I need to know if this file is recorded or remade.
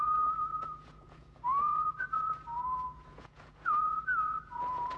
remade